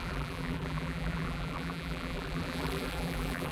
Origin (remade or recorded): remade